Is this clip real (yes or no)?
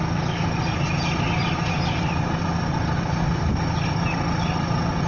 yes